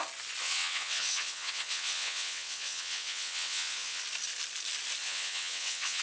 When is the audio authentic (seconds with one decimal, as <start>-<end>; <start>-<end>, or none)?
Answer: 0.0-0.4; 4.0-5.0

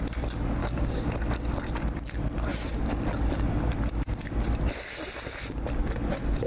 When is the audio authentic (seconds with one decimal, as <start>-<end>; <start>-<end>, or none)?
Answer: 0.0-0.6; 1.1-6.5

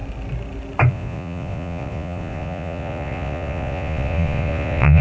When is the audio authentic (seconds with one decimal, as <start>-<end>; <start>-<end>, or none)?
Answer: 0.0-0.9